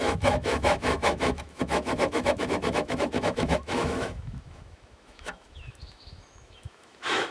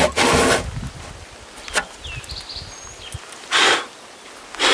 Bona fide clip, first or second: second